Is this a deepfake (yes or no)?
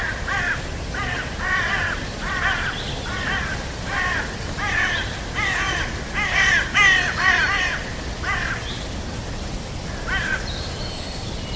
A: no